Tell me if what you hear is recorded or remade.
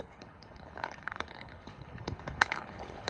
remade